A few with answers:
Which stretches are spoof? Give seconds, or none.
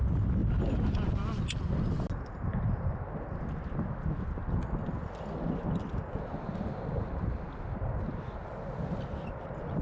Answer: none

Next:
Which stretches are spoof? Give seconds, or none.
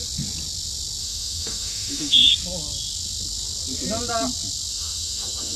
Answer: 1.0-2.3 (autoencoder, DAC-VAE); 4.7-5.6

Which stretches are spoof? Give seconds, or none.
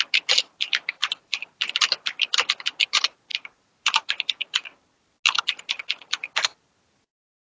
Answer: 1.0-1.6 (vocoder, BigVGAN v2); 3.3-5.1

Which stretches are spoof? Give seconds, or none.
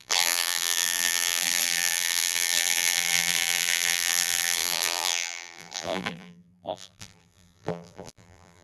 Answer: 0.0-8.6 (vocoder, BigVGAN v2)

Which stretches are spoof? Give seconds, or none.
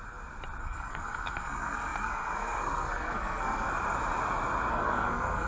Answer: 0.6-3.7 (codec, SNAC); 4.7-5.5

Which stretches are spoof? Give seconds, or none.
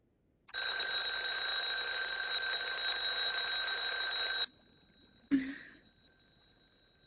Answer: none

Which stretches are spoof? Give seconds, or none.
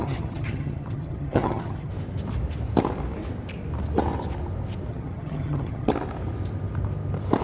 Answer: 0.0-1.9 (vocoder, HiFi-GAN); 4.9-5.9